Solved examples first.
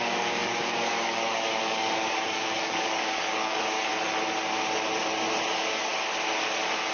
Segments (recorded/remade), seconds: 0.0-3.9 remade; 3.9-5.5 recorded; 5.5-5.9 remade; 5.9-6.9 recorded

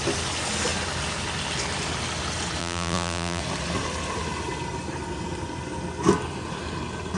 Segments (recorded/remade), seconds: 0.0-2.6 recorded; 2.6-3.4 remade; 3.4-7.2 recorded

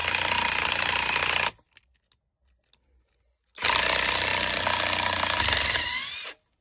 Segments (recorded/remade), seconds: 0.0-6.6 recorded

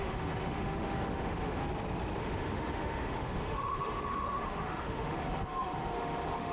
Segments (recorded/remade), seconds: 0.0-1.6 remade; 1.6-2.2 recorded; 2.2-6.5 remade

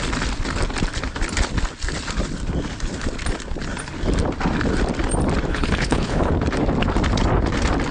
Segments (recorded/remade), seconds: 0.0-5.5 recorded; 5.5-6.3 remade; 6.3-7.9 recorded

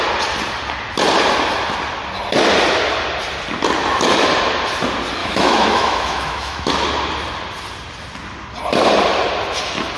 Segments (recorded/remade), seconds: 0.0-5.2 recorded; 5.2-6.7 remade; 6.7-10.0 recorded

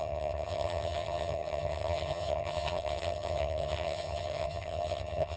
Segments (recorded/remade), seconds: 0.0-5.4 remade